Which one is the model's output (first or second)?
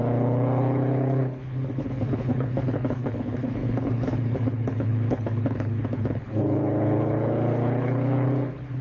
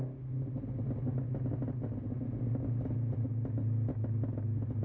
first